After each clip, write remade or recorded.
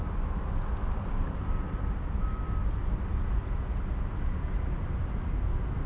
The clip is recorded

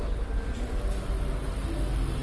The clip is recorded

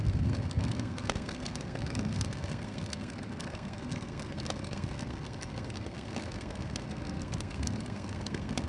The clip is remade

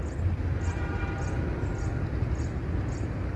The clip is recorded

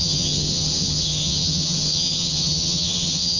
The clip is remade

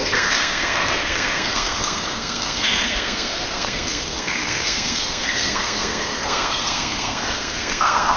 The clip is remade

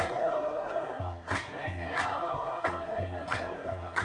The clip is remade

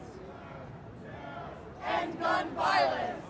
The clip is recorded